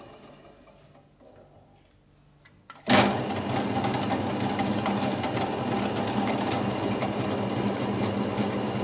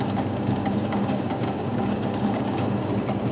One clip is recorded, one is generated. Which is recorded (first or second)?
first